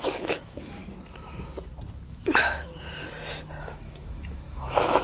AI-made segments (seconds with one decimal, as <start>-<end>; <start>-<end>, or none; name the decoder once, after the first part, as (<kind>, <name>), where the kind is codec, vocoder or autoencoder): 0.0-0.8 (autoencoder, DAC-VAE); 2.1-2.7; 3.6-5.0